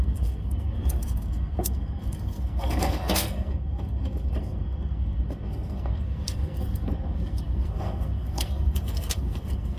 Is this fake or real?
fake